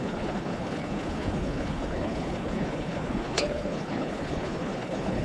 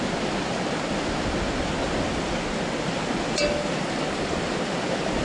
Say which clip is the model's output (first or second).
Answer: first